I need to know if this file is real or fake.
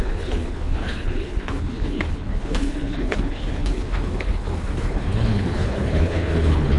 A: fake